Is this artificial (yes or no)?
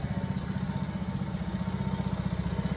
no